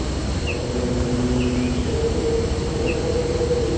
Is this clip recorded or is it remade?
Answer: recorded